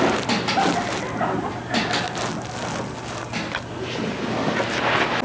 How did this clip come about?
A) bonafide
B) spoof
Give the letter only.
A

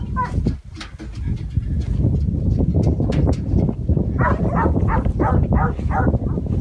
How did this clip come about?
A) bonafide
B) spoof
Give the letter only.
A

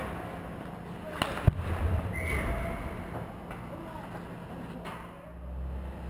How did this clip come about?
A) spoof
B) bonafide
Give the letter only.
B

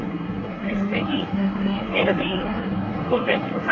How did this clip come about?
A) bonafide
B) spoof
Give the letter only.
B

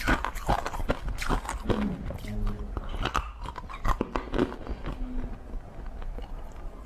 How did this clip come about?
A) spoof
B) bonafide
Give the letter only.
B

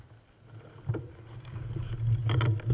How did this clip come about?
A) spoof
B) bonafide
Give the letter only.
B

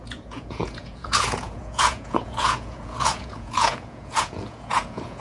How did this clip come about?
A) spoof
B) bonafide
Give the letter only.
A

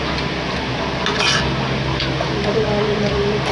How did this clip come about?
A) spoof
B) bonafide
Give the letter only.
B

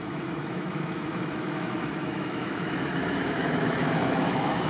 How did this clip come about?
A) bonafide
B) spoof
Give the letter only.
B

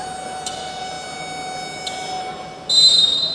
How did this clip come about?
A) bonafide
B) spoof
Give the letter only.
A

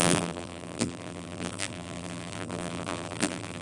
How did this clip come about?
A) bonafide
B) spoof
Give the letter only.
B